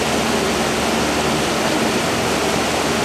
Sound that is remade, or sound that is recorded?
recorded